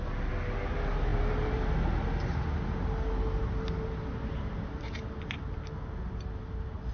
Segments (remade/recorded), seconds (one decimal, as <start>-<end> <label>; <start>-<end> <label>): 0.0-6.9 recorded